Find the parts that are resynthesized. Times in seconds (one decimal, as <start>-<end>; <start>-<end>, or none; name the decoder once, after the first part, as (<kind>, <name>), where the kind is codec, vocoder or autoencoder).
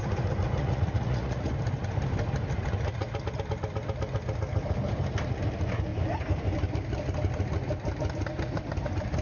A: 0.6-1.5 (vocoder, Vocos)